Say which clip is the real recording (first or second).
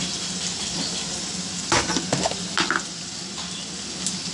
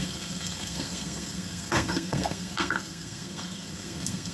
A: first